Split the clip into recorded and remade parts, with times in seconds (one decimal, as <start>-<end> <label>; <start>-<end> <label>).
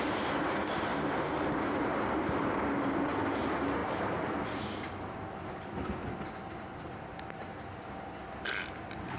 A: 0.0-9.2 recorded